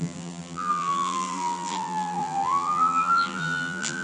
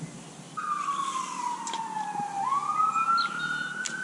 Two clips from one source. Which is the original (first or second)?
second